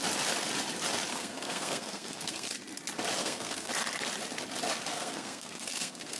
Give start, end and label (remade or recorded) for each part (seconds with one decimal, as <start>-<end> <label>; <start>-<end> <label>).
0.0-1.1 recorded; 1.1-2.5 remade; 2.5-3.2 recorded; 3.2-3.7 remade; 3.7-4.9 recorded; 4.9-6.2 remade